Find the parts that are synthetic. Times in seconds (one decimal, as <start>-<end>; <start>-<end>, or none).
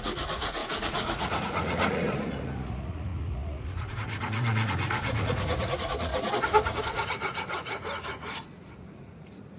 0.0-6.1; 6.8-9.6